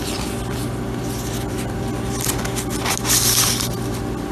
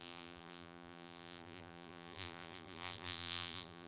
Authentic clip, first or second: first